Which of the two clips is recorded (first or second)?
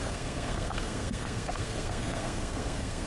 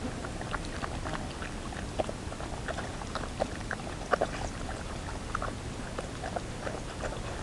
second